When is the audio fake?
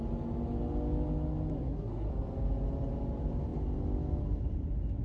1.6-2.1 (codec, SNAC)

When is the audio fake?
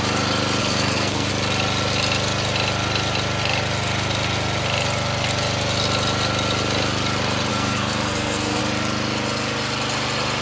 0.6-1.3 (codec, SNAC); 7.5-8.6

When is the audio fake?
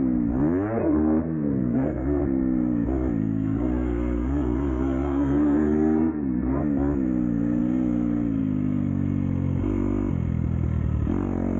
0.8-2.2 (codec, SNAC); 3.2-6.6